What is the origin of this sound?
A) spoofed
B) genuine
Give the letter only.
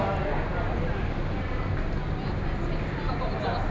B